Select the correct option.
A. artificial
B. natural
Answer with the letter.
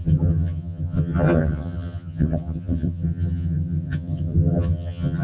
A